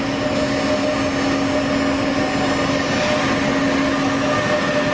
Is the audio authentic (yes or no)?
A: yes